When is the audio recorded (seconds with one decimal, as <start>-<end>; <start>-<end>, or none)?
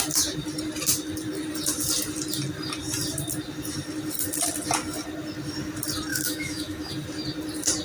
0.0-6.1; 6.9-7.8